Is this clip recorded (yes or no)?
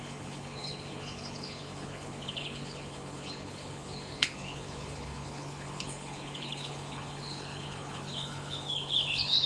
no